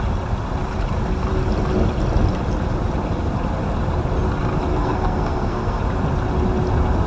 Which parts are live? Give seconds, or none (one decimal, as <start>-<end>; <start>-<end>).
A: 0.0-4.7; 5.8-7.1